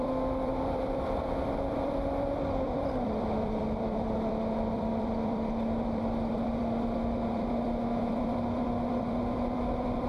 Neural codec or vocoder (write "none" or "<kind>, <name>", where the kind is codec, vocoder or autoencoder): vocoder, BigVGAN v2